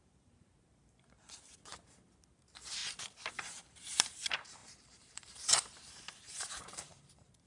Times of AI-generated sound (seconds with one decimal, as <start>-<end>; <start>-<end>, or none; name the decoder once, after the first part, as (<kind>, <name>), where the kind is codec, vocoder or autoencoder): 0.0-1.7 (vocoder, BigVGAN v2); 2.4-2.8; 3.3-7.5